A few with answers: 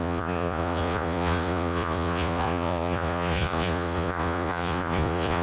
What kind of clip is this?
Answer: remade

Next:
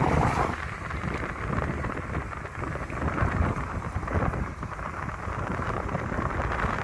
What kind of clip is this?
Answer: recorded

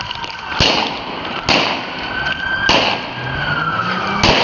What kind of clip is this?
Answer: recorded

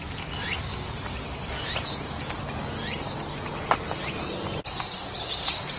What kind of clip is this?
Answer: recorded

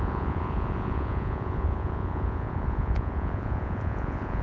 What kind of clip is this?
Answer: remade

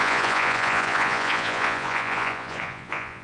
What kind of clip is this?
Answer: remade